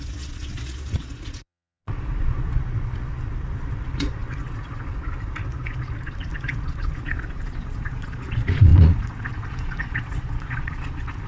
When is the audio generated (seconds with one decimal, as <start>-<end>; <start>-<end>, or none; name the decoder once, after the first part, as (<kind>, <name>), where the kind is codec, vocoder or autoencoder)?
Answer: 0.0-11.3 (vocoder, Vocos)